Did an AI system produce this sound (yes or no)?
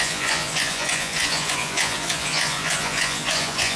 yes